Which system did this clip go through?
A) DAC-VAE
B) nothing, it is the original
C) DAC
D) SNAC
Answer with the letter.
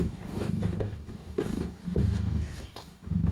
C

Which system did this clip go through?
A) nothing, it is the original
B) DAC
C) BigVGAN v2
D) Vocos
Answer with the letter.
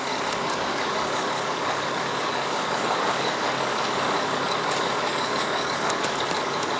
B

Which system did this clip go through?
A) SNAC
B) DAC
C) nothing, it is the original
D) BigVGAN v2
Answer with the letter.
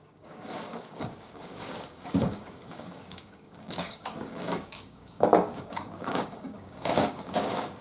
B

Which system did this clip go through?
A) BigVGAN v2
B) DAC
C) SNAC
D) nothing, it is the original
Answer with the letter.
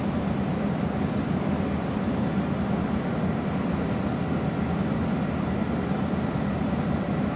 D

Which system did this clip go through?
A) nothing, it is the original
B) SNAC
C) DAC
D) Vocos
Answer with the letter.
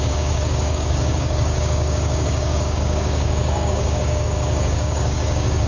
C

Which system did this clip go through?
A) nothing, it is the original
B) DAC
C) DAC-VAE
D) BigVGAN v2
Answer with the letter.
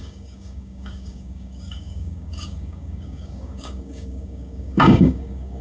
B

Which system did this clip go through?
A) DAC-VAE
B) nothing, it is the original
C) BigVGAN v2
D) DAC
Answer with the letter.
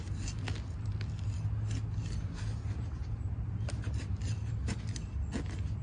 B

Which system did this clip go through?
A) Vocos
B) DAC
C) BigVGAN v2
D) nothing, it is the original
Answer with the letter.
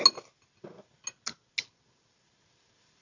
D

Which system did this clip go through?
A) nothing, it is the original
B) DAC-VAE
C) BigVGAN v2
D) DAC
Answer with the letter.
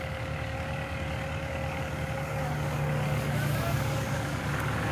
D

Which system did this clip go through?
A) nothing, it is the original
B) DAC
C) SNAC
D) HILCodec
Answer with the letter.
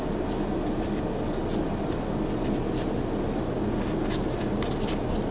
A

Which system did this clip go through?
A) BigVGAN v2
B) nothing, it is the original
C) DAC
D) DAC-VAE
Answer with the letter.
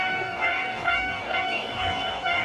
C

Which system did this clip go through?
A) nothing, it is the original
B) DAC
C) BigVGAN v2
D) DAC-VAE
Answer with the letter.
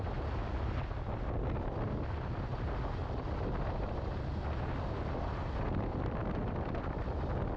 A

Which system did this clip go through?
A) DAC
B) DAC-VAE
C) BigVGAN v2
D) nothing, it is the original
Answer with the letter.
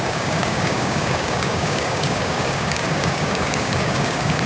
A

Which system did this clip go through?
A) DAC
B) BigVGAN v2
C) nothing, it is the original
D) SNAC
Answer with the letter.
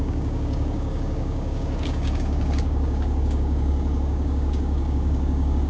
A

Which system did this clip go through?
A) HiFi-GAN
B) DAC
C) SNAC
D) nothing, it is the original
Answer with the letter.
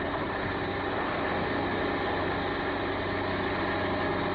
D